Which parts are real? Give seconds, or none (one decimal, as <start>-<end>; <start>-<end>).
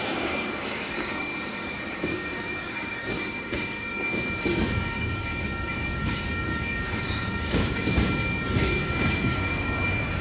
1.3-1.9